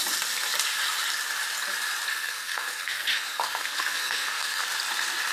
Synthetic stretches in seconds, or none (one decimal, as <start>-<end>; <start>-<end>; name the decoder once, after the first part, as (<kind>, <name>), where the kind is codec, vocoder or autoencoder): 2.1-4.6 (codec, SNAC)